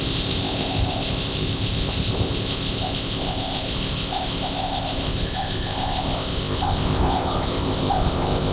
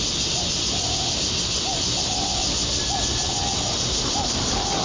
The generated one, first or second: first